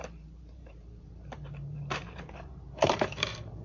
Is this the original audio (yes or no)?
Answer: no